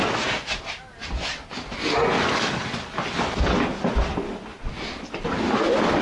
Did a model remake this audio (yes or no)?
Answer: no